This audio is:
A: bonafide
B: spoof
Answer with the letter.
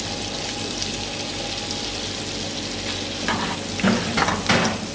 A